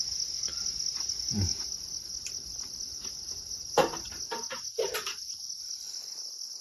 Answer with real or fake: real